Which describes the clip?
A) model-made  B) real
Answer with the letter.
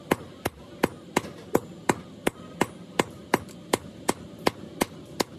B